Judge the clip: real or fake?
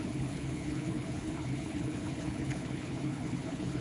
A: fake